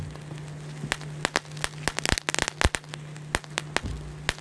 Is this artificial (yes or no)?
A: no